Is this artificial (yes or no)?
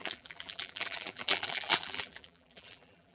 yes